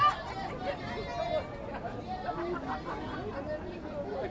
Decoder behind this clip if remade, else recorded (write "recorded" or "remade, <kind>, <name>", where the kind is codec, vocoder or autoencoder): recorded